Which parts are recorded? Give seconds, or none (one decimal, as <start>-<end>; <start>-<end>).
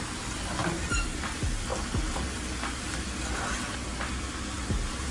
0.0-0.6; 1.2-5.1